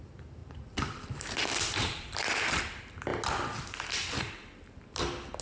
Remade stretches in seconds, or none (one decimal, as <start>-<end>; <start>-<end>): 0.4-2.4